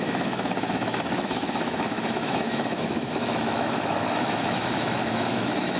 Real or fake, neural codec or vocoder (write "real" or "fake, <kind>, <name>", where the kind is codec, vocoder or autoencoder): fake, autoencoder, DAC-VAE